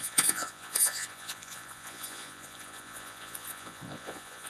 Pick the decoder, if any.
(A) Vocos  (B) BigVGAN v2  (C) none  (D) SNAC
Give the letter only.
A